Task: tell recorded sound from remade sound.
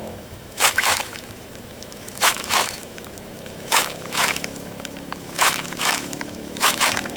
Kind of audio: remade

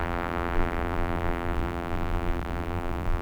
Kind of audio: remade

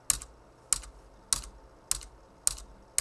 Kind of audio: recorded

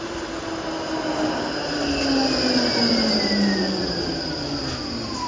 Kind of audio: recorded